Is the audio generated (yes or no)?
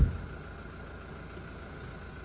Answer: no